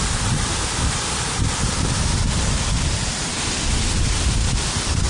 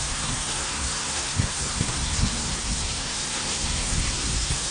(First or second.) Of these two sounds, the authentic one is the first